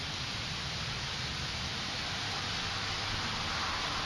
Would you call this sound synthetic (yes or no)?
no